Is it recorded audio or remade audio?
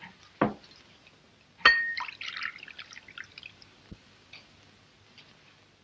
recorded